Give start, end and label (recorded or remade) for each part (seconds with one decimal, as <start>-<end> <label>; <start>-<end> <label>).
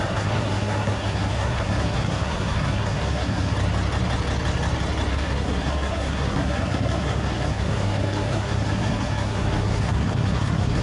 0.0-3.5 remade; 3.5-5.1 recorded; 5.1-10.8 remade